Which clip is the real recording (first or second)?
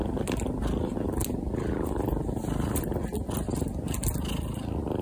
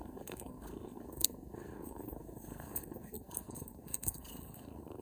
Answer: first